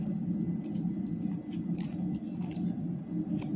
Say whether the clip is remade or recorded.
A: recorded